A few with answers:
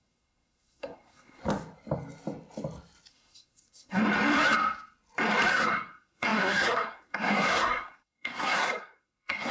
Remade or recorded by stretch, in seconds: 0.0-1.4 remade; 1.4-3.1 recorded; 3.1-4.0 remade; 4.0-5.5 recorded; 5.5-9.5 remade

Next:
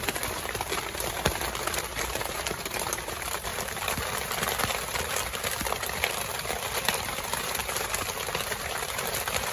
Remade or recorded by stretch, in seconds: 0.0-3.5 remade; 3.5-6.1 recorded; 6.1-7.6 remade; 7.6-8.4 recorded; 8.4-9.5 remade

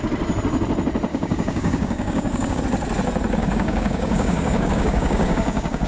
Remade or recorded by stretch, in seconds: 0.0-1.1 recorded; 1.1-2.6 remade; 2.6-3.4 recorded; 3.4-5.9 remade

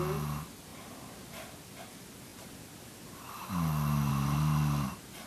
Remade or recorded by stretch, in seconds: 0.0-5.3 recorded

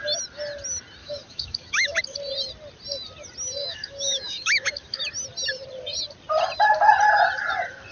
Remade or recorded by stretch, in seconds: 0.0-1.0 recorded; 1.0-2.0 remade; 2.0-3.6 recorded; 3.6-5.0 remade; 5.0-7.9 recorded

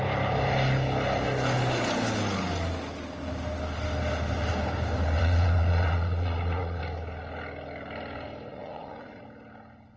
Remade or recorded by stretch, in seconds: 0.0-5.2 recorded; 5.2-6.8 remade; 6.8-8.5 recorded; 8.5-9.2 remade; 9.2-10.0 recorded

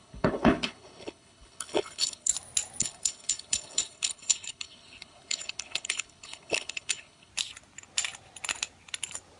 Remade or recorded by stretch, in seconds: 0.0-2.3 remade; 2.3-2.8 recorded; 2.8-7.3 remade; 7.3-9.4 recorded